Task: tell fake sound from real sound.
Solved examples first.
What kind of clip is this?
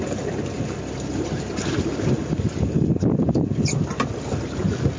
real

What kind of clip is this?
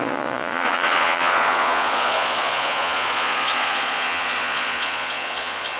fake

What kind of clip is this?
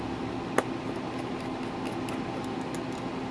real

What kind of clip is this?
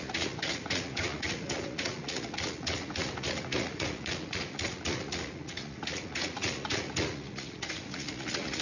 fake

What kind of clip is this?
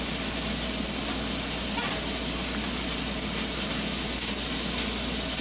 real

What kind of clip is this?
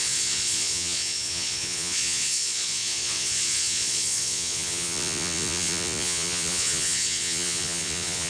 fake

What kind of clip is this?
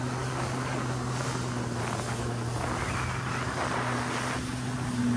real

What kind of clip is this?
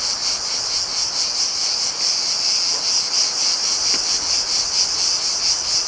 real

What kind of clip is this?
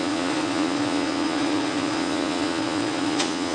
fake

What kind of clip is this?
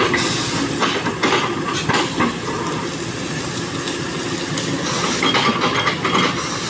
real